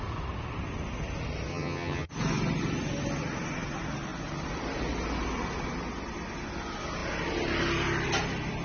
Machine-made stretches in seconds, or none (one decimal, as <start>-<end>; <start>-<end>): 1.5-2.1